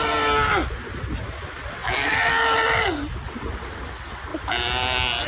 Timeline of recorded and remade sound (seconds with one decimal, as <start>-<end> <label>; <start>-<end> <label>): 0.0-5.3 recorded